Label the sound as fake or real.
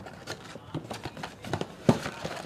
real